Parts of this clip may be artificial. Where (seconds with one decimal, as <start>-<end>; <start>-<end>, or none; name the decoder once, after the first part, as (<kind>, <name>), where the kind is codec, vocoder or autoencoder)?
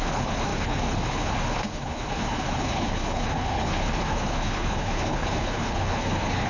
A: 0.0-6.5 (codec, HILCodec)